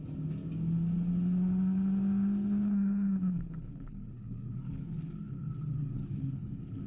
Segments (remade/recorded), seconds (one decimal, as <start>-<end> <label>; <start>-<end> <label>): 0.0-2.6 recorded; 2.6-6.9 remade